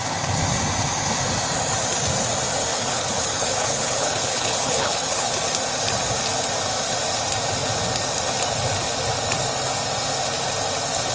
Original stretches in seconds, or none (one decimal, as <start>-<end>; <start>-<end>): 0.0-2.7; 5.3-11.1